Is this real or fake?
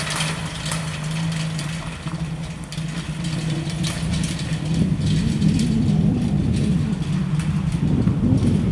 real